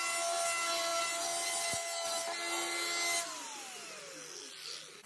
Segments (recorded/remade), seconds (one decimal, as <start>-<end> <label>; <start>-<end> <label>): 0.0-5.1 recorded